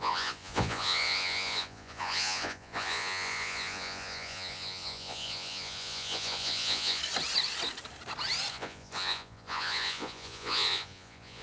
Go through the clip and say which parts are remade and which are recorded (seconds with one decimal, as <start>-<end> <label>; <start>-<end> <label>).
0.0-7.0 remade; 7.0-8.5 recorded; 8.5-11.4 remade